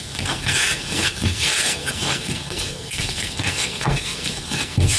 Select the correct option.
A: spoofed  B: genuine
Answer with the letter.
A